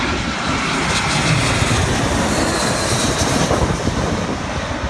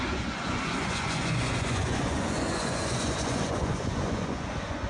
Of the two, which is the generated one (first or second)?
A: second